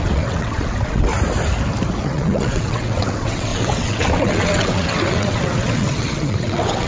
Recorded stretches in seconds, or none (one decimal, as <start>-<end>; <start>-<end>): 1.1-2.0